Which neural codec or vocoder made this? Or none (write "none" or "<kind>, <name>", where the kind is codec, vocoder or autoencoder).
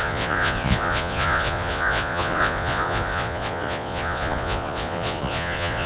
vocoder, Vocos